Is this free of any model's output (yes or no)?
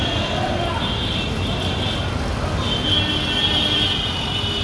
yes